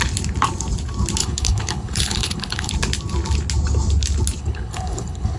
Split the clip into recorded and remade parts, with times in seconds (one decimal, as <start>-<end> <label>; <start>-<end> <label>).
0.0-1.2 recorded; 1.2-2.7 remade; 2.7-4.4 recorded; 4.4-5.4 remade

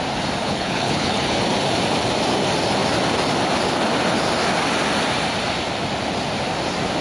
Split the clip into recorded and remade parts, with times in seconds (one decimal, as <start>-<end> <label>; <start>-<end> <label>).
0.0-0.4 recorded; 0.4-1.4 remade; 1.4-7.0 recorded

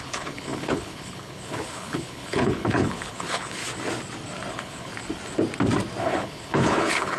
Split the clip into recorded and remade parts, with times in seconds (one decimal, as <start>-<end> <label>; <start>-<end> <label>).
0.0-3.6 remade; 3.6-4.5 recorded; 4.5-4.9 remade; 4.9-6.0 recorded; 6.0-7.2 remade

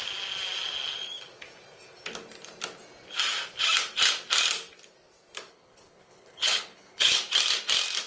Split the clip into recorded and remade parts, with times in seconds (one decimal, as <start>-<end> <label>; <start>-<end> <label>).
0.0-5.5 recorded; 5.5-7.2 remade; 7.2-8.1 recorded

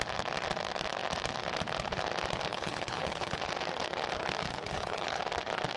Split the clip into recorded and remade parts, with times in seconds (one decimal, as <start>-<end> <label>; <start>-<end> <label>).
0.0-2.5 recorded; 2.5-3.4 remade; 3.4-4.5 recorded; 4.5-5.2 remade; 5.2-5.8 recorded